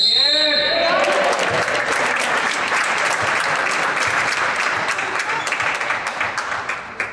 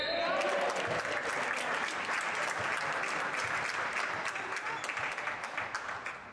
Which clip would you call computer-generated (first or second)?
first